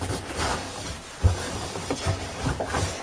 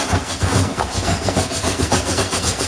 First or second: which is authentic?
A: first